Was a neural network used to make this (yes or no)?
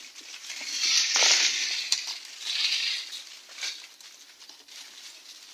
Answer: no